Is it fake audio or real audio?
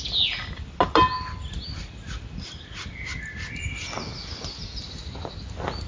real